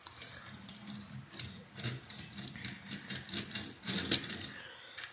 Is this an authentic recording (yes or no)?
yes